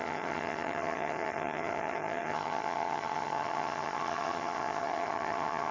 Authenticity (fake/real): fake